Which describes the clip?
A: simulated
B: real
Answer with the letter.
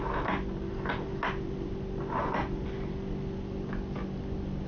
B